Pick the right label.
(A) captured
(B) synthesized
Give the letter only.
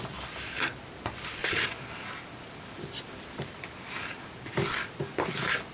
B